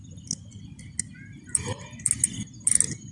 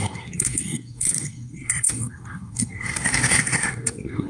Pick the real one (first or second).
first